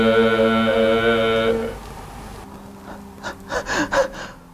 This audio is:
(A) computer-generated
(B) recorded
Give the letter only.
B